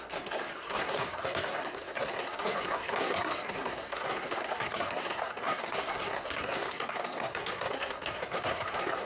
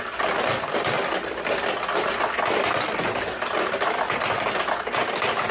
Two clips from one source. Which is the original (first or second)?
second